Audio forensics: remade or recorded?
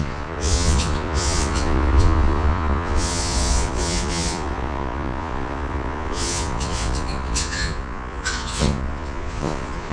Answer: remade